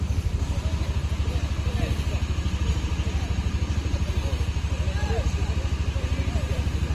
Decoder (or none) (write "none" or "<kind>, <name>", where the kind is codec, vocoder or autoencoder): none